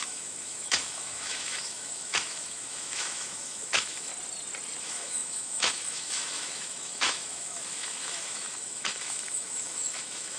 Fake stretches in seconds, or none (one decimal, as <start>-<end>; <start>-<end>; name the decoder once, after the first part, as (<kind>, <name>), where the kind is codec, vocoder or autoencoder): 0.0-4.1 (autoencoder, DAC-VAE); 4.8-10.4